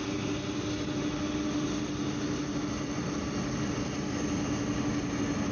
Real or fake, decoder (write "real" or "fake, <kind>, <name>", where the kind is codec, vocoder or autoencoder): real